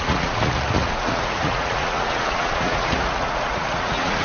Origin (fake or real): fake